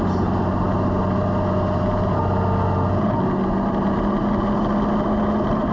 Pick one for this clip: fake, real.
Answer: real